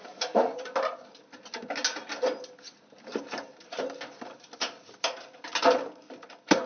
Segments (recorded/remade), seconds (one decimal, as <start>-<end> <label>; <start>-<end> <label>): 0.0-6.7 recorded